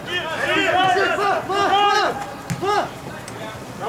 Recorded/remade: recorded